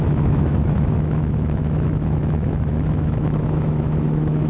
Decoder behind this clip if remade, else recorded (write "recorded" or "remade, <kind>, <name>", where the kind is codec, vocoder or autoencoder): remade, autoencoder, DAC-VAE